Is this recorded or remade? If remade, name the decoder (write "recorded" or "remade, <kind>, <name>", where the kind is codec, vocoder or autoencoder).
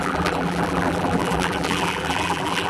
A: remade, vocoder, BigVGAN v2